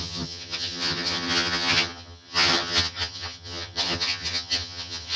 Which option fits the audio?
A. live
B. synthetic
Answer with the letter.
B